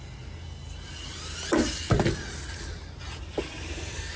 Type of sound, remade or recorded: recorded